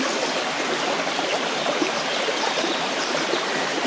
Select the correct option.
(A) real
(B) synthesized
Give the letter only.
B